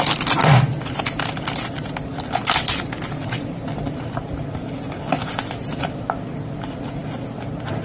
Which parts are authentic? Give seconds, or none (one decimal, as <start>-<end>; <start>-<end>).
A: 0.0-7.8